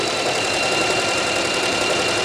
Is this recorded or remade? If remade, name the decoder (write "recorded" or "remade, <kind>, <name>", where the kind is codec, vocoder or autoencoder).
remade, vocoder, BigVGAN v2